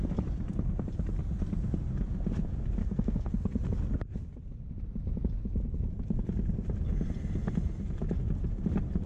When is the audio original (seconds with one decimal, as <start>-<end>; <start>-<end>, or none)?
0.0-2.8; 3.3-9.1